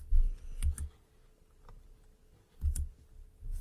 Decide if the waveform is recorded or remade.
recorded